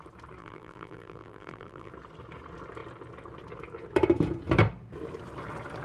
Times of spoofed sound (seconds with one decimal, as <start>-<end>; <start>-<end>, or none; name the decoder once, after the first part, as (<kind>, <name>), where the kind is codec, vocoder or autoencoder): 0.4-1.9 (vocoder, BigVGAN v2)